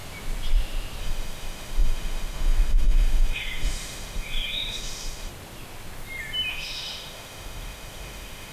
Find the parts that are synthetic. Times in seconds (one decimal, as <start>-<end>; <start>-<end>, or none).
1.0-5.3; 6.5-8.5